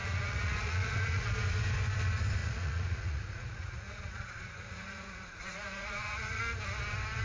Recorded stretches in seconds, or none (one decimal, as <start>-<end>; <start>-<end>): 1.3-2.4; 6.4-7.2